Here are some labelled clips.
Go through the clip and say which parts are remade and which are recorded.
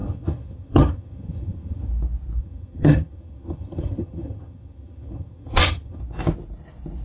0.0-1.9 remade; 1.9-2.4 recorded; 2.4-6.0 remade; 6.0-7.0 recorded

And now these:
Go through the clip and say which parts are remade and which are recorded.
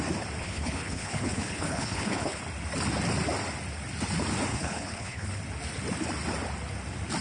0.0-0.4 recorded; 0.4-2.4 remade; 2.4-4.5 recorded; 4.5-5.4 remade; 5.4-7.2 recorded